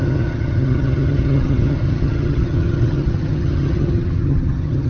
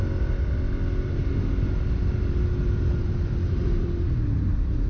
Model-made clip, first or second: first